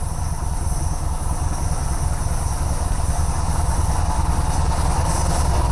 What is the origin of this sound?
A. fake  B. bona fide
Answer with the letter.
B